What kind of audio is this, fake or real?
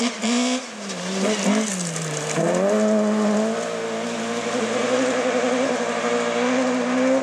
real